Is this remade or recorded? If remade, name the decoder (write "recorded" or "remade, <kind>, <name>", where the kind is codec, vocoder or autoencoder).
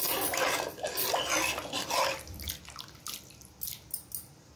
recorded